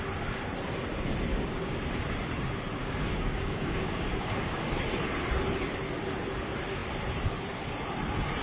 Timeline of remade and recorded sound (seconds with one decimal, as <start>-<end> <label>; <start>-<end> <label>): 0.0-1.3 recorded; 1.3-1.8 remade; 1.8-2.8 recorded; 2.8-4.7 remade; 4.7-8.4 recorded